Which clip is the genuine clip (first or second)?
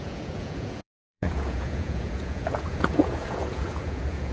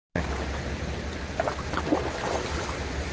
second